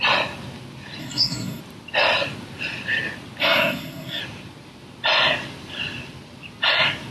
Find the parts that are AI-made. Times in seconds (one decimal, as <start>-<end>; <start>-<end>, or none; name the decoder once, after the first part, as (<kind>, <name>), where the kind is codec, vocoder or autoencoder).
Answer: 1.0-1.6 (codec, SNAC); 3.4-4.2